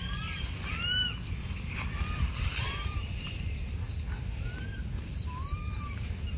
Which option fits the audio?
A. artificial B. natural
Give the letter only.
B